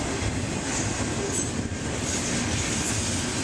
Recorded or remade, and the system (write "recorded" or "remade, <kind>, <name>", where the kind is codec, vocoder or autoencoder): recorded